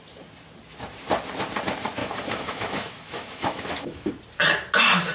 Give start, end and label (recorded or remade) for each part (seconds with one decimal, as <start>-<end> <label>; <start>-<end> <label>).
0.0-2.0 recorded; 2.0-4.1 remade; 4.1-5.1 recorded

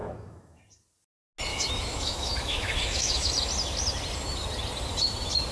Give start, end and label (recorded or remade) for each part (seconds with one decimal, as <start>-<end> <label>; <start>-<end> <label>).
0.0-0.6 remade; 0.6-1.5 recorded; 1.5-3.3 remade; 3.3-5.5 recorded

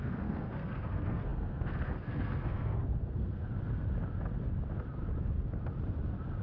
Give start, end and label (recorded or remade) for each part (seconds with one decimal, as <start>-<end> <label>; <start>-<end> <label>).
0.0-3.5 remade; 3.5-6.4 recorded

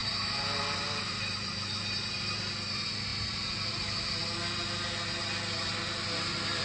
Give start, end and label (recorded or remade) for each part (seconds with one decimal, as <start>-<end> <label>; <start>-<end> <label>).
0.0-4.2 remade; 4.2-5.6 recorded; 5.6-6.6 remade